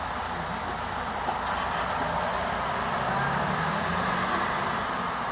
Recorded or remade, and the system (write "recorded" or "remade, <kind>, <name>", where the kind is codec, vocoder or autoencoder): recorded